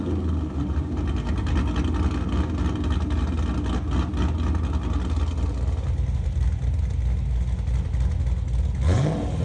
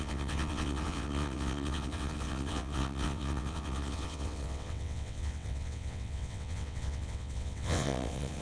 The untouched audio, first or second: first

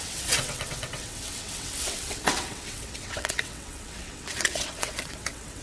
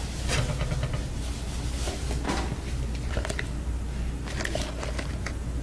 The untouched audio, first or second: second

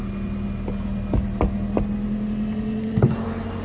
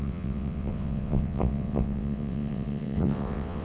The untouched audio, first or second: first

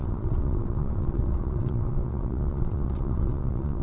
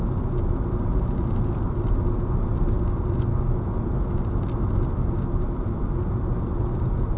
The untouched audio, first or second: second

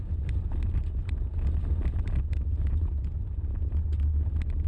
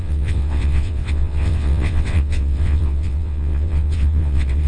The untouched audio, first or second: first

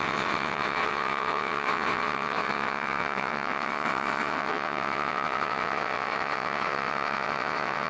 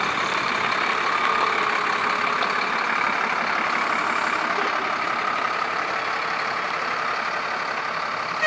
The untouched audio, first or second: second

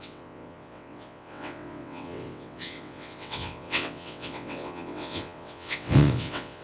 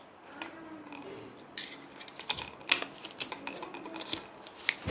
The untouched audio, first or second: second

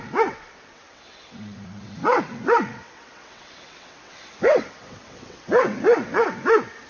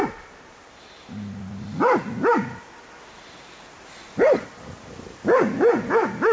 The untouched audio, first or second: second